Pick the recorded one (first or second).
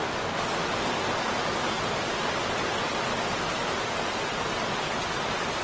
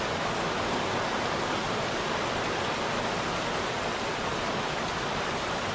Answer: first